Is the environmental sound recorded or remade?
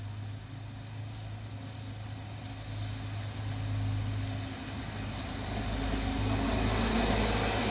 recorded